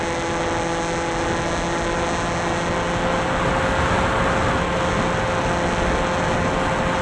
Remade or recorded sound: recorded